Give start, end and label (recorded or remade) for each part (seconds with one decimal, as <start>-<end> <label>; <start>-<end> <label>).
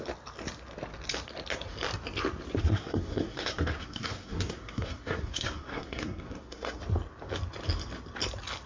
0.0-2.6 recorded; 2.6-6.8 remade; 6.8-8.7 recorded